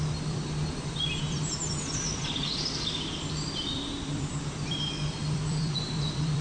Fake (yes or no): yes